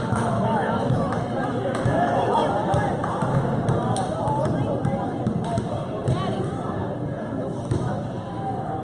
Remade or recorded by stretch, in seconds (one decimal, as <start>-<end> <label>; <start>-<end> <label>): 0.0-2.4 remade; 2.4-7.2 recorded; 7.2-8.8 remade